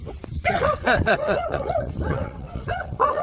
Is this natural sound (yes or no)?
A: no